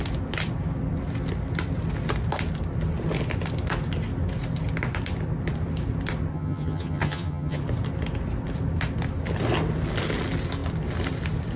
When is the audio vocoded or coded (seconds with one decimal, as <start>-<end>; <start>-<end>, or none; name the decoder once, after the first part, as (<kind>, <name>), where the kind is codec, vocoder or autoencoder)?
6.3-7.6 (vocoder, HiFi-GAN)